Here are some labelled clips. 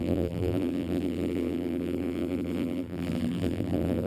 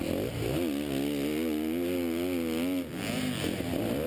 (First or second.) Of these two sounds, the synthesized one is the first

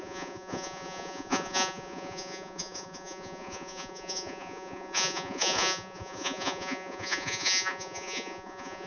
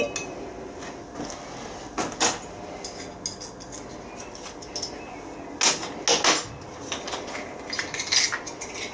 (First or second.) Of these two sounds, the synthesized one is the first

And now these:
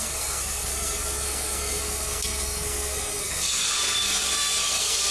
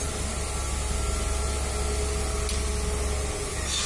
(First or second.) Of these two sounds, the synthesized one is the first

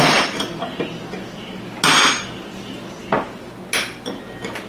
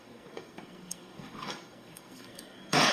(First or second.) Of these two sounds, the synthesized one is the second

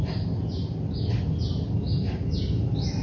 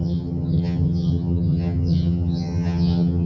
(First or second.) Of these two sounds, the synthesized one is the second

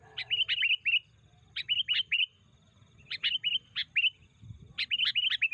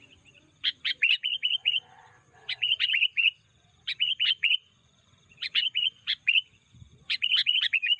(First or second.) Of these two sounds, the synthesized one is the second